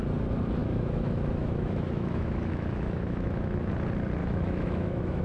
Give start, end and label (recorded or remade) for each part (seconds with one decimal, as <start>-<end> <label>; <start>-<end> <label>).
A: 0.0-0.6 recorded; 0.6-3.7 remade; 3.7-4.2 recorded; 4.2-5.2 remade